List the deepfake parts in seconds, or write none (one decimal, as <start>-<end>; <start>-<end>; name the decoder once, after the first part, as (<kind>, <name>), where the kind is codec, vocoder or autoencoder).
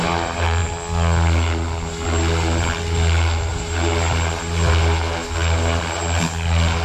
none